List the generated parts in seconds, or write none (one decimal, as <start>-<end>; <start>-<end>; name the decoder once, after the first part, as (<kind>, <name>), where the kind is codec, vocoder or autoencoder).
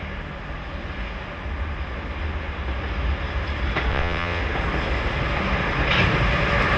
3.9-4.4 (vocoder, WaveNeXt)